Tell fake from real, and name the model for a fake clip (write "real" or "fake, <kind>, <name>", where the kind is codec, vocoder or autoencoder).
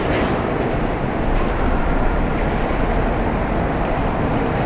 real